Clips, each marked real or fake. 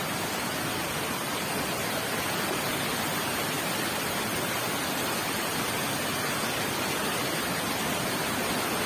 real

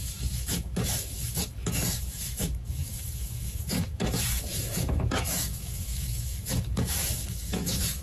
fake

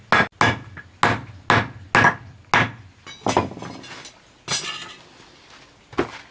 real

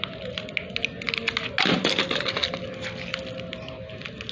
real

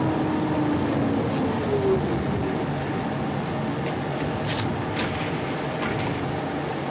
real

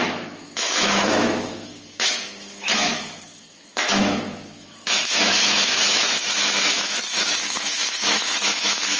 fake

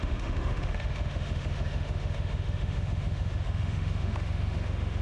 fake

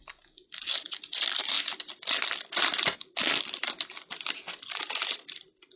real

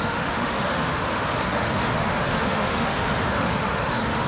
fake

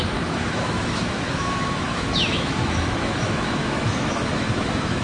fake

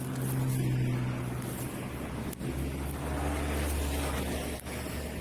real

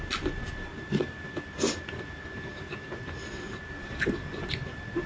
real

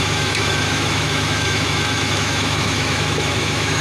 fake